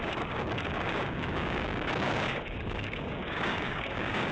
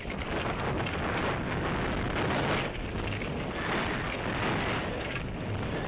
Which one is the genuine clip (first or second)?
second